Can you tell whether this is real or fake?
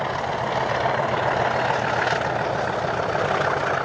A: real